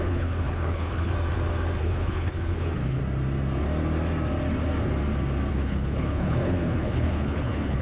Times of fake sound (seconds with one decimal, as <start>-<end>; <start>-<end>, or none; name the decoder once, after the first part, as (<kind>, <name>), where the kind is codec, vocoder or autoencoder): 0.0-1.1 (codec, HILCodec); 1.8-3.0; 5.5-7.8